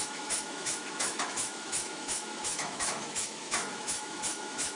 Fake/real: fake